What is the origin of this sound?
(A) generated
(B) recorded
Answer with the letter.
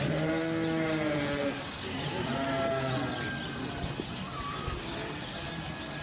B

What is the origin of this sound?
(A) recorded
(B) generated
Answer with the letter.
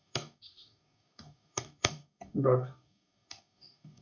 B